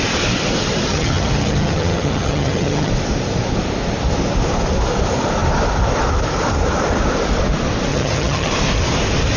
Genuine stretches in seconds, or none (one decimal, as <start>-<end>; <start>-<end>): 0.0-0.9; 2.9-7.9; 8.5-9.4

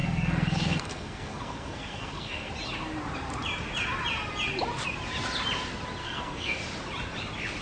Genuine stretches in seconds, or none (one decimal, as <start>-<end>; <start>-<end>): 2.5-6.0; 6.6-7.6

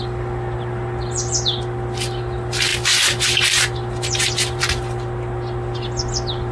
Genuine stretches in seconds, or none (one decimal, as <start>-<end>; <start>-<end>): 0.0-6.5

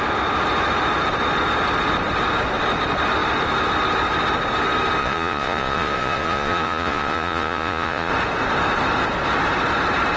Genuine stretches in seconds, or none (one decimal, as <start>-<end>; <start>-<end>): 0.0-5.0; 8.1-10.2

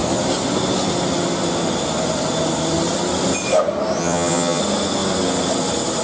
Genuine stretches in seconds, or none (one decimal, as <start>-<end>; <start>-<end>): 0.0-4.0; 4.6-6.0

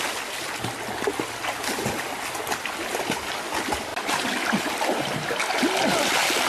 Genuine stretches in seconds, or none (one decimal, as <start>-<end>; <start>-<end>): 0.0-6.5

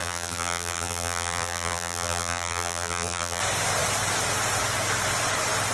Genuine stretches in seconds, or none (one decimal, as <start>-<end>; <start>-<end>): 3.4-5.7

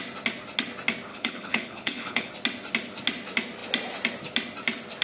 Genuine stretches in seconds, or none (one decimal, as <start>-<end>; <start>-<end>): 0.0-1.1; 2.3-5.0